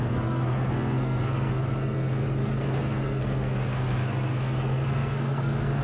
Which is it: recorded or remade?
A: remade